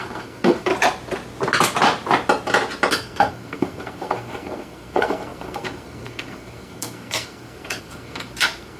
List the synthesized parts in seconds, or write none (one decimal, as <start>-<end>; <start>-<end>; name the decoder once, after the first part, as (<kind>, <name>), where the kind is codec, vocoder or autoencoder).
0.0-0.7 (codec, SNAC); 2.9-8.8